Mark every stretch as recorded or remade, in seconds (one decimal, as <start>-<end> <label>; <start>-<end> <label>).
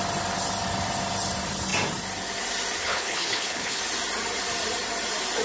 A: 0.0-2.8 recorded; 2.8-3.8 remade; 3.8-5.4 recorded